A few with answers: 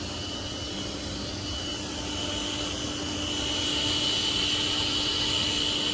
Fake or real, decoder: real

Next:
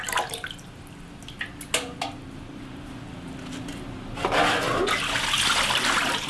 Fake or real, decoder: real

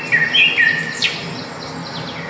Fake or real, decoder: real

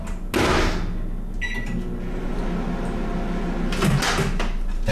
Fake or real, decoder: real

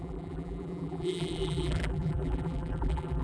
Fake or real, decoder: fake, vocoder, BigVGAN v2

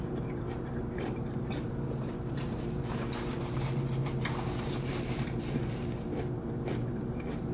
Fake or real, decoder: fake, vocoder, BigVGAN v2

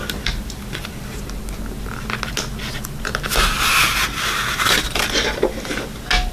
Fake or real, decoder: real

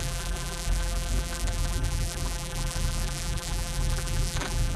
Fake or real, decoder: fake, vocoder, BigVGAN v2